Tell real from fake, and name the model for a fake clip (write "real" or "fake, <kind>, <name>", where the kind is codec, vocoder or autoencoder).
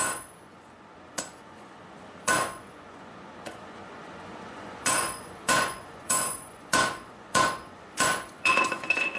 fake, vocoder, Vocos